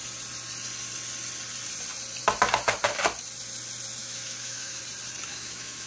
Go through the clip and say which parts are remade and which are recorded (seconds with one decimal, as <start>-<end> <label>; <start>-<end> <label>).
0.0-4.0 recorded; 4.0-4.8 remade; 4.8-5.3 recorded; 5.3-5.9 remade